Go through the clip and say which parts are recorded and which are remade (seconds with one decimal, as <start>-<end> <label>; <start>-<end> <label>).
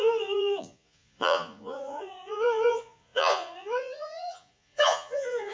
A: 0.0-5.5 remade